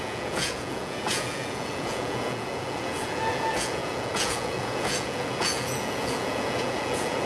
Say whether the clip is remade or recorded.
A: remade